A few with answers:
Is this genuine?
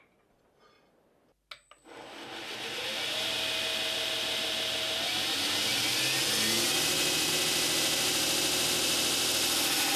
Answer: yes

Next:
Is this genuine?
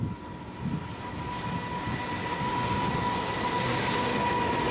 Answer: yes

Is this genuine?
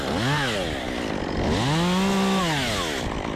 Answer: yes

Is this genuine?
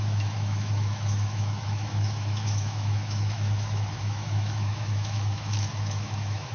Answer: no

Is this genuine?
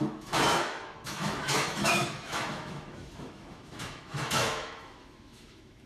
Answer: no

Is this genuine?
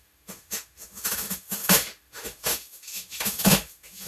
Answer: no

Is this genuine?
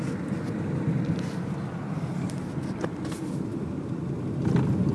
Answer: yes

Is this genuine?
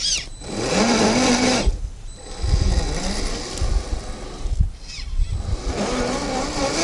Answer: yes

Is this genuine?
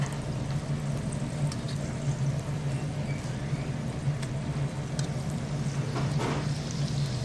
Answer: yes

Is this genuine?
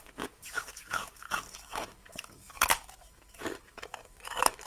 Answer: no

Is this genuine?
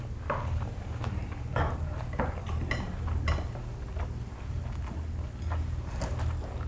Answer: yes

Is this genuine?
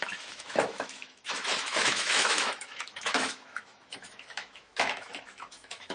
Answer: no